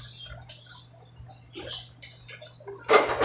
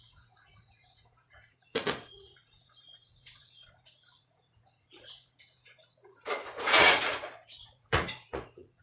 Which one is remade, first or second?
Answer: second